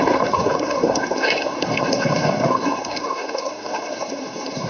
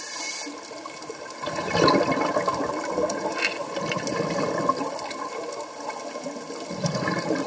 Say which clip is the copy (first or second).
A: first